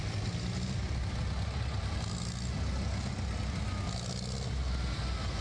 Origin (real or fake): real